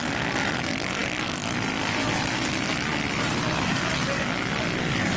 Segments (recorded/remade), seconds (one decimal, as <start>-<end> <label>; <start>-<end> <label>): 0.0-1.0 recorded; 1.0-3.8 remade; 3.8-5.2 recorded